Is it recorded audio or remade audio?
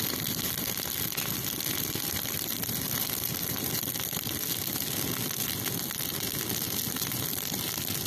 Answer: recorded